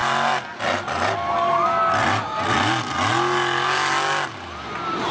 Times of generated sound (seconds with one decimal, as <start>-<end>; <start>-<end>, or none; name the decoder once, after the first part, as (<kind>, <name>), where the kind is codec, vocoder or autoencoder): none